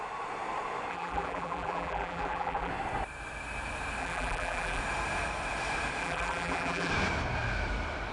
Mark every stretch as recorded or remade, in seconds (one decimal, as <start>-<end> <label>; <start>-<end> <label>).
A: 0.0-0.9 recorded; 0.9-2.7 remade; 2.7-4.0 recorded; 4.0-4.8 remade; 4.8-6.0 recorded; 6.0-6.9 remade; 6.9-8.1 recorded